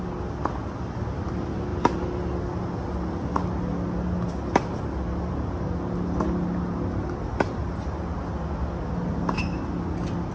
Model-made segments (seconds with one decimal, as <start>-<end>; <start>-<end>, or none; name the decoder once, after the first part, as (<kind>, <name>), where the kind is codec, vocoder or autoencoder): none